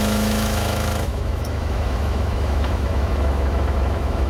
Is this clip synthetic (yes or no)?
yes